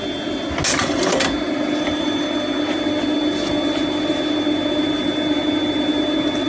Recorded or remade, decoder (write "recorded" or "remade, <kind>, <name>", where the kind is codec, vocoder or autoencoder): recorded